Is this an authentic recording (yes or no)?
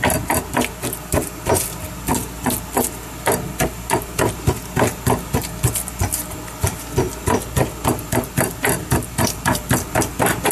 yes